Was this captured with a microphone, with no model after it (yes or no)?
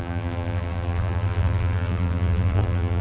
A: no